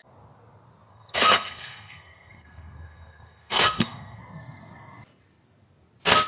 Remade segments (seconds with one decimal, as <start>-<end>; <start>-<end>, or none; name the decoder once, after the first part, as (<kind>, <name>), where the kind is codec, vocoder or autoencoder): 0.9-4.2 (codec, SNAC)